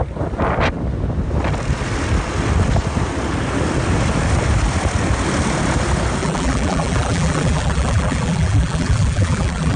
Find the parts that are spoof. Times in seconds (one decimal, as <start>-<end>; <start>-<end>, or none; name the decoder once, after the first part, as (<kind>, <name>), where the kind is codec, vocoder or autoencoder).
6.2-9.8 (vocoder, BigVGAN v2)